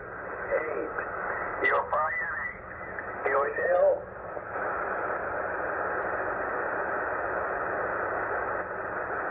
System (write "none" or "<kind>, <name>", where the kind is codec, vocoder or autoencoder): none